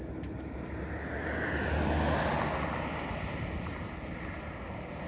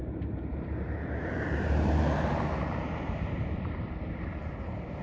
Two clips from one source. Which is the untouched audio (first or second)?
first